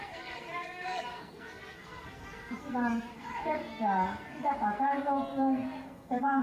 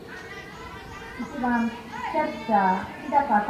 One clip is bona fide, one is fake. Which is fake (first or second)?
first